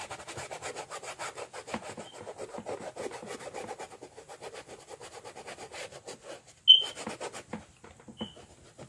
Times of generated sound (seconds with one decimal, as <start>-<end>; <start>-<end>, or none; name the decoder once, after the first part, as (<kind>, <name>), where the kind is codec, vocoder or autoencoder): none